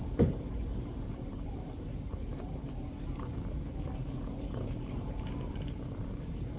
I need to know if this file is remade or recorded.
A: remade